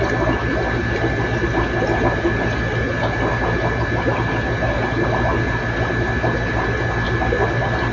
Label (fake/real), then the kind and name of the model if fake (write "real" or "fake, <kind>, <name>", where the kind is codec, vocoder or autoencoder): real